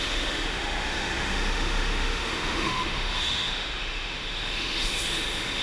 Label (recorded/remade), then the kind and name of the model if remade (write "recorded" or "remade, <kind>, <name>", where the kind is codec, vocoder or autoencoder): remade, autoencoder, DAC-VAE